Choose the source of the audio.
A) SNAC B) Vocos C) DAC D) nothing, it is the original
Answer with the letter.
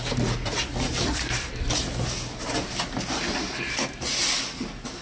D